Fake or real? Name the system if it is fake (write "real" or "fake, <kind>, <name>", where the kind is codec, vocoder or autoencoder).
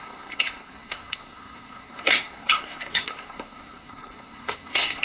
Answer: fake, codec, SNAC